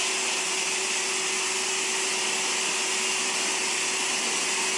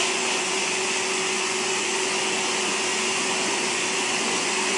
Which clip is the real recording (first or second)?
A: first